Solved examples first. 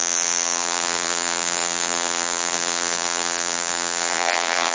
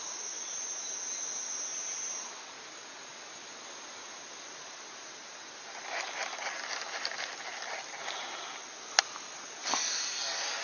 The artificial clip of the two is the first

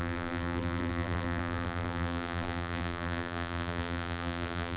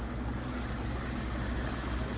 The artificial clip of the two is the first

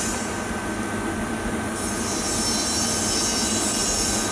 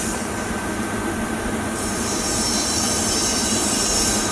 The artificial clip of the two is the second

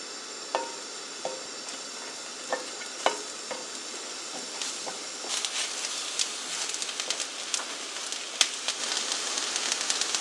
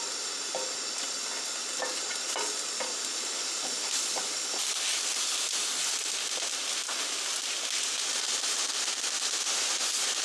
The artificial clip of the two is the second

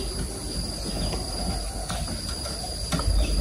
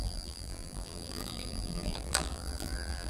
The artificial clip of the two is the second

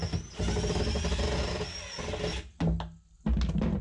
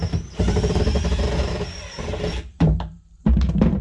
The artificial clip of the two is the second